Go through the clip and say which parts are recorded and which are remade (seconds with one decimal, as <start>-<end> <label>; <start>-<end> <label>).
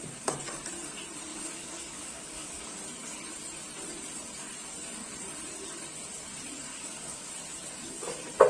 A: 0.0-1.3 recorded; 1.3-2.8 remade; 2.8-6.7 recorded; 6.7-7.3 remade; 7.3-8.5 recorded